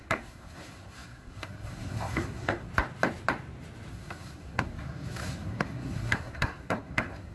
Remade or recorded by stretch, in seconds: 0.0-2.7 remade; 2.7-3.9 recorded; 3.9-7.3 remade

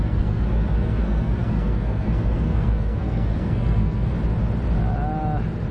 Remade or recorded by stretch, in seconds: 0.0-4.1 remade; 4.1-5.7 recorded

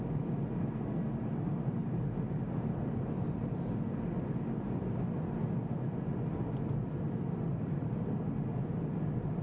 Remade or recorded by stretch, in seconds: 0.0-0.6 recorded; 0.6-1.1 remade; 1.1-9.4 recorded